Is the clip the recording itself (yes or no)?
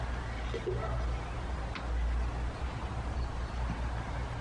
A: yes